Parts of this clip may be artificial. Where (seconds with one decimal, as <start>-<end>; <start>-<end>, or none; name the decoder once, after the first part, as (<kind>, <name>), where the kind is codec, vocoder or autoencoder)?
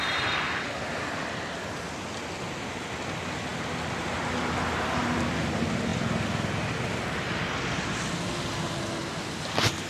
none